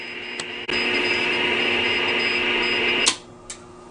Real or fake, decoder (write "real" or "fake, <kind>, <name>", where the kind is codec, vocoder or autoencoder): real